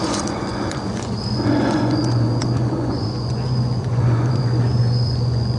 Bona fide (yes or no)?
no